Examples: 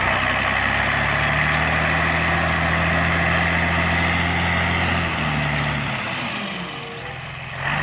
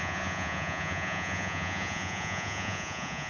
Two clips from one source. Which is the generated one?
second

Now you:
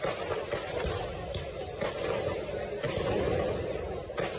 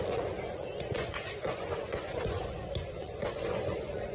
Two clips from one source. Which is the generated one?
second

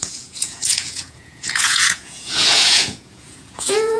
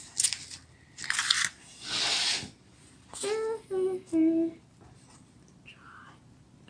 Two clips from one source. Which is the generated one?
first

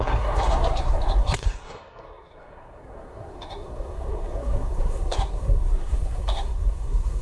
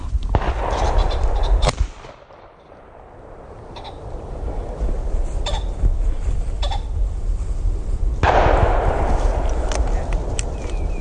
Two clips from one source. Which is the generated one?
first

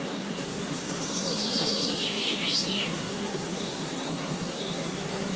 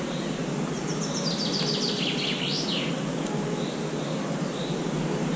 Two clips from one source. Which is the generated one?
first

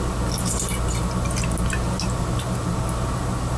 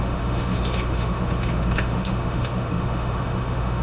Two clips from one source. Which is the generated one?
second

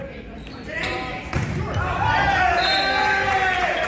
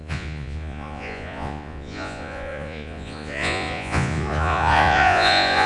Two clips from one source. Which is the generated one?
second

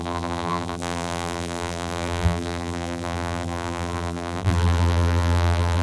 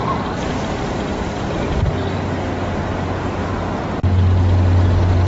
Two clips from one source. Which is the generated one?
first